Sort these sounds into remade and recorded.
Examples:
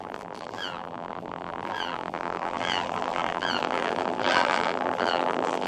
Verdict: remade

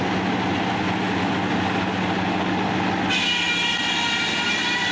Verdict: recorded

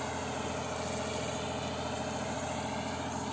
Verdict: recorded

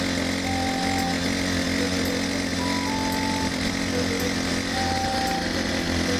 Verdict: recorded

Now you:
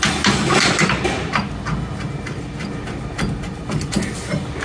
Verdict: recorded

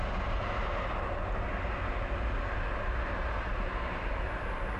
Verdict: recorded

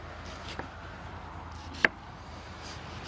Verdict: recorded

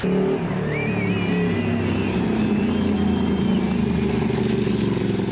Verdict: recorded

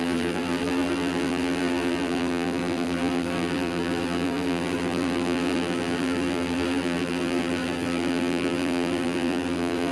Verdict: remade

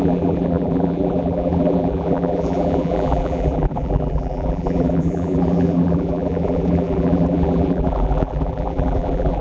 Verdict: remade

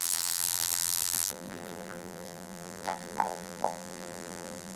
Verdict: remade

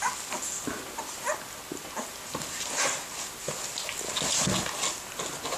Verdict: recorded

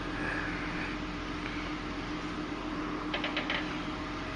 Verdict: recorded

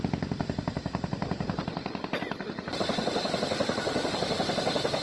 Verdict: recorded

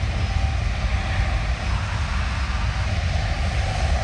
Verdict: recorded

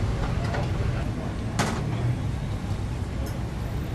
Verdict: recorded